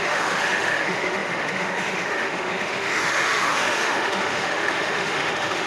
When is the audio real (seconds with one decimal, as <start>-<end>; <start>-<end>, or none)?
none